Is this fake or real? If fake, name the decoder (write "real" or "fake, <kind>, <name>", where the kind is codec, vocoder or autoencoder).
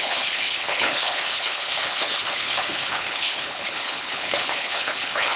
fake, codec, HILCodec